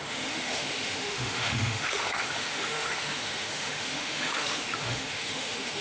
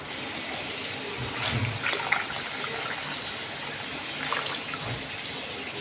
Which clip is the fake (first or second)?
first